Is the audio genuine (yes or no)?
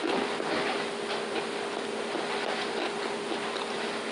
yes